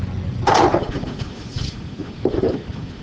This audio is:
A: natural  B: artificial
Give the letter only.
A